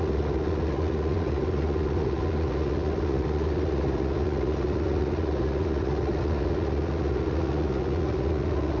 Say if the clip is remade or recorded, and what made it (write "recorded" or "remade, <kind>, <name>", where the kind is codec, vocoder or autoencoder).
remade, vocoder, Vocos